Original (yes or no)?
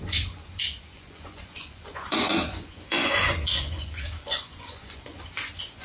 no